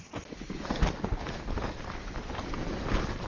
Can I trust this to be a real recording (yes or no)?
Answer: yes